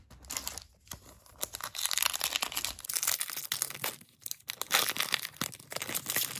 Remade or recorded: recorded